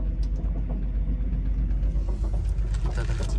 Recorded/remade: recorded